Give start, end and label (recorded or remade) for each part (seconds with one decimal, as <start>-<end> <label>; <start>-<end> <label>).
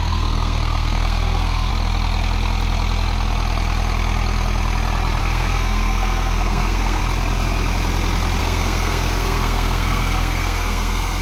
0.0-1.7 remade; 1.7-5.2 recorded; 5.2-7.0 remade; 7.0-8.4 recorded; 8.4-11.2 remade